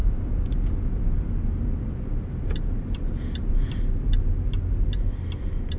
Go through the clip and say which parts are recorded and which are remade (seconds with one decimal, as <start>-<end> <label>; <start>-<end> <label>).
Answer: 0.0-5.8 recorded